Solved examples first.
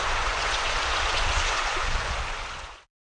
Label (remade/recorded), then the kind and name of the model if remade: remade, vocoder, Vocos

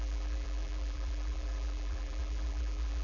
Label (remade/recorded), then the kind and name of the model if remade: remade, vocoder, BigVGAN v2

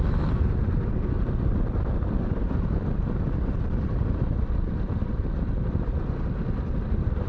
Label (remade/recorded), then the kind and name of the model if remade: recorded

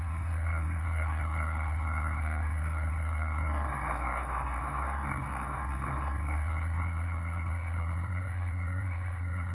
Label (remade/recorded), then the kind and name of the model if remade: remade, codec, SNAC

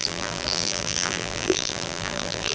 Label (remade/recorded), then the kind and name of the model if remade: remade, vocoder, BigVGAN v2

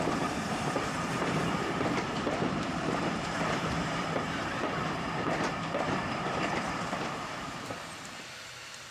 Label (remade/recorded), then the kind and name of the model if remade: remade, vocoder, BigVGAN v2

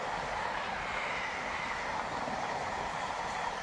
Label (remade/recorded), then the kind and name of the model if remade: recorded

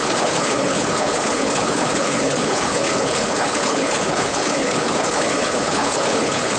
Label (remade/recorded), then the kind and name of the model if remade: remade, codec, HILCodec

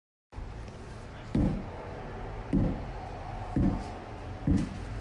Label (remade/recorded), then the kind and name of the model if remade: recorded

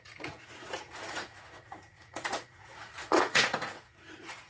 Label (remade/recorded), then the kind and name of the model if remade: remade, vocoder, Vocos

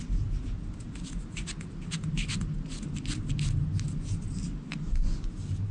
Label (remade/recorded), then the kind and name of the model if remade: recorded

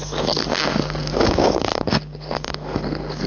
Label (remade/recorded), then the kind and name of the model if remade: remade, codec, SNAC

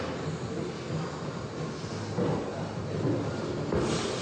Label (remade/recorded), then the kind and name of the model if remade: recorded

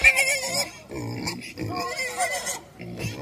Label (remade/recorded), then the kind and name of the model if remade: recorded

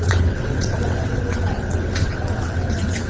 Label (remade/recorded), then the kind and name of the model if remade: remade, vocoder, WaveNeXt